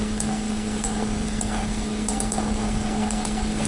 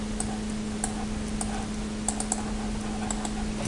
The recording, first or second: second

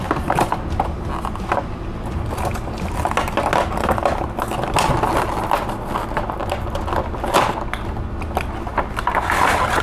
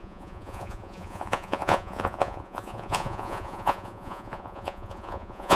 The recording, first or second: first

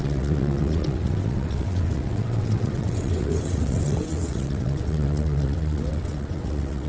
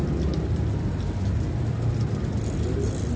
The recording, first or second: second